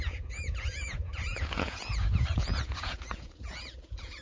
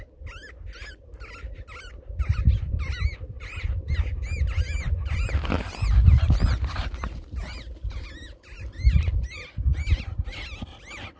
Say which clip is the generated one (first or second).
first